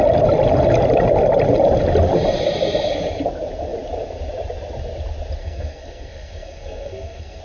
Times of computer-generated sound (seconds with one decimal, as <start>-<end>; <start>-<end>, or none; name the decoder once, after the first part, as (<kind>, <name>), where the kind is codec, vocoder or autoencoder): 5.4-7.4 (codec, SNAC)